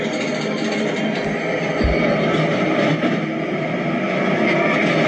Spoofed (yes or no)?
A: no